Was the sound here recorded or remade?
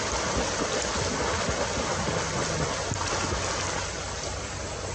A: recorded